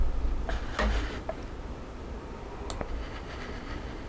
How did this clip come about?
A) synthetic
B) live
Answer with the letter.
B